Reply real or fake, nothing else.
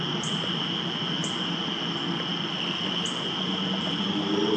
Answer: real